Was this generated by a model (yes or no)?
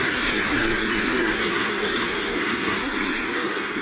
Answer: yes